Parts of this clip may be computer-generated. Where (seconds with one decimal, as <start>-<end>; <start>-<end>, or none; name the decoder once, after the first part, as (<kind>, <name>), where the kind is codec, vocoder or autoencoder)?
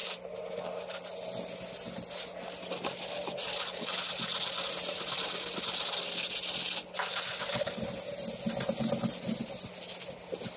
none